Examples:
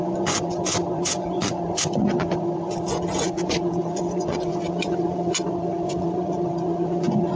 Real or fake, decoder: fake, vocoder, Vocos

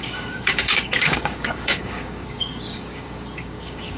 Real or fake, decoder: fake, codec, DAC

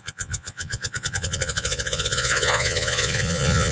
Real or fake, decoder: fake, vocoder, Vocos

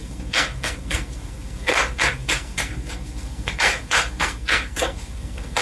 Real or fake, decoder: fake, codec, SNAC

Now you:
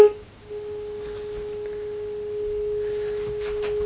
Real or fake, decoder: real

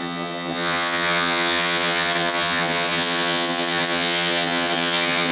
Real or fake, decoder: fake, vocoder, HiFi-GAN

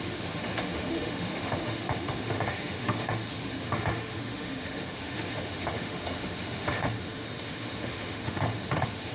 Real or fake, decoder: fake, autoencoder, DAC-VAE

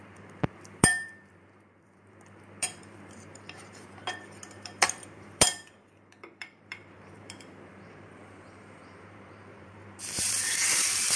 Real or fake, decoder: fake, vocoder, BigVGAN v2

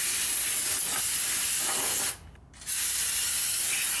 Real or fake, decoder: real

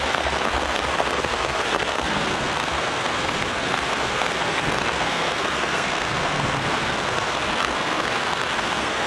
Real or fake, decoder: fake, codec, SNAC